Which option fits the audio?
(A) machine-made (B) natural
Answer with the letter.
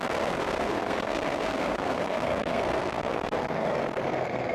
A